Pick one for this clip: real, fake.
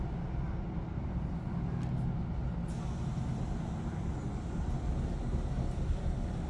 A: real